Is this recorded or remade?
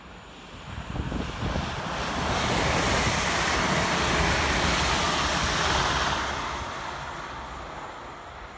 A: recorded